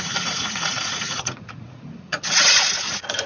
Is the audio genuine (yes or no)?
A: no